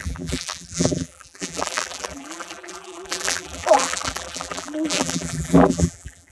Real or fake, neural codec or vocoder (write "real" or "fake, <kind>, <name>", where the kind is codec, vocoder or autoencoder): fake, vocoder, BigVGAN v2